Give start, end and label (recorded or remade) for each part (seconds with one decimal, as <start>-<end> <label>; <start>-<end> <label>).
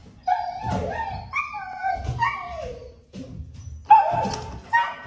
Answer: 0.0-1.1 remade; 1.1-5.1 recorded